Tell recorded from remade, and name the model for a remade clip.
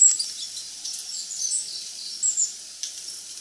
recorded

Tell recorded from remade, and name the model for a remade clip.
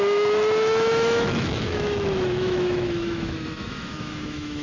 remade, autoencoder, DAC-VAE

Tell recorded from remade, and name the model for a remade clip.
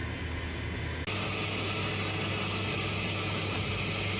recorded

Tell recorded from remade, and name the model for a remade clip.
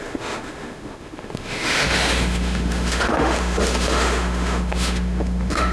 remade, autoencoder, DAC-VAE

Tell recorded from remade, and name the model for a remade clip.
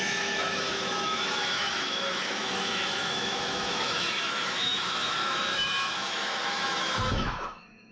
remade, autoencoder, DAC-VAE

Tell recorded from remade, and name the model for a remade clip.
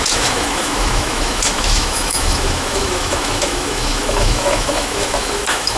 remade, autoencoder, DAC-VAE